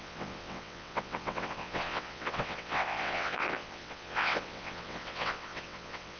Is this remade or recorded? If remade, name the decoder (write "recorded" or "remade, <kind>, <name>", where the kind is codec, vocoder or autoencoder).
remade, vocoder, WaveNeXt